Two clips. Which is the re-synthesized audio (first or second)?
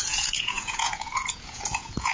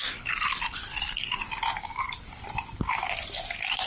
first